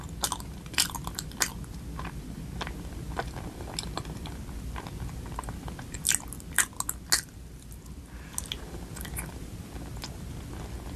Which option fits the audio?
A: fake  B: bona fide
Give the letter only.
B